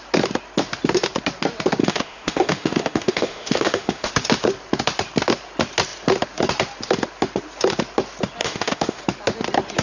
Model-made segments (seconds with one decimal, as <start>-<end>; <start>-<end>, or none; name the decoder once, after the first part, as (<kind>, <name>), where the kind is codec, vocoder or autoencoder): 1.8-4.1 (autoencoder, DAC-VAE); 8.4-9.0